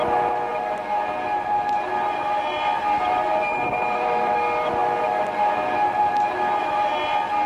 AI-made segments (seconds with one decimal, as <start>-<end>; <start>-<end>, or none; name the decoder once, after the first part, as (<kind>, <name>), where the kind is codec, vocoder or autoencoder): none